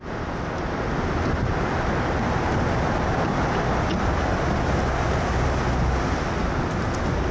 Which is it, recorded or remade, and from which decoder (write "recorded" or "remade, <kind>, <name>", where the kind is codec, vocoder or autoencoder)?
recorded